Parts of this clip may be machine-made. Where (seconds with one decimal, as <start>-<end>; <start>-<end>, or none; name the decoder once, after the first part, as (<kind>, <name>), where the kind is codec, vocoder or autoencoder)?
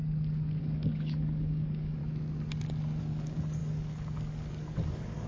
0.6-2.0 (codec, DAC); 3.0-5.3